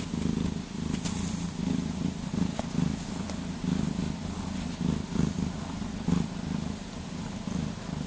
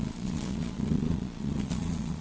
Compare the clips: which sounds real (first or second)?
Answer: first